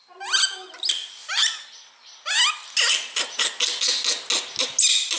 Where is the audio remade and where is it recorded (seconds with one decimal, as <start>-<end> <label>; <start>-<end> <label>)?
0.0-5.2 recorded